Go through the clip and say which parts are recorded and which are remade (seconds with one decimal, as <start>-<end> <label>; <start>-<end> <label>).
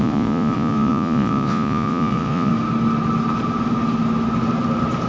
0.0-2.5 remade; 2.5-5.1 recorded